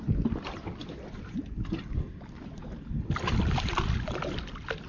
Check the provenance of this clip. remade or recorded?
recorded